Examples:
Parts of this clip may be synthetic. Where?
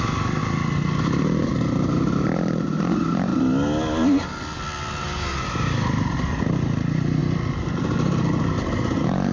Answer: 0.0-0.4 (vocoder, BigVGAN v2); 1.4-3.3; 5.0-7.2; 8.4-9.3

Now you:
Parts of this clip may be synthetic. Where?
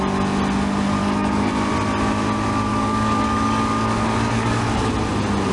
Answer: 1.0-1.5 (codec, DAC); 2.7-4.9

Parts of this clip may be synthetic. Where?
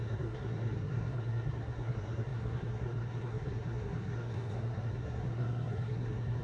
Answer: 0.0-6.4 (codec, SNAC)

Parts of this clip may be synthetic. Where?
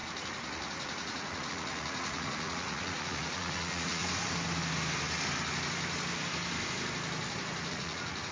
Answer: 0.0-4.0 (vocoder, Vocos); 7.7-8.3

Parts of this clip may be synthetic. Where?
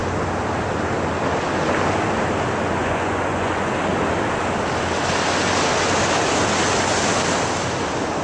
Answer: 2.8-3.7 (vocoder, Vocos)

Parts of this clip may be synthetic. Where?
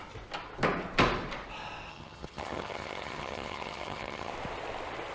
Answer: 1.9-4.3 (vocoder, HiFi-GAN)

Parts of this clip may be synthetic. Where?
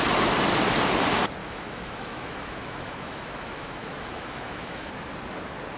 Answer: 1.4-4.9 (autoencoder, DAC-VAE)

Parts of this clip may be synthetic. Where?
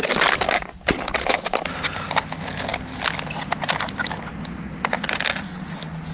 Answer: none